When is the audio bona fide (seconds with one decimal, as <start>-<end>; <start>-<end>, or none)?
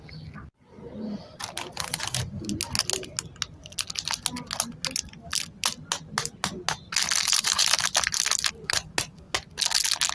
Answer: 0.0-7.2; 7.8-10.1